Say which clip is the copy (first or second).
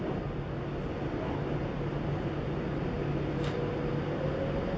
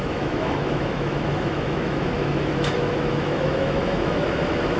second